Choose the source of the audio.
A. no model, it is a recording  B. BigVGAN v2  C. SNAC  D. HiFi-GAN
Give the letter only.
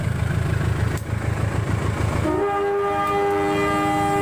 A